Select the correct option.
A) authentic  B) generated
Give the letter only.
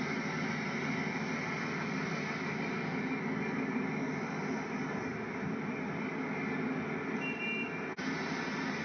A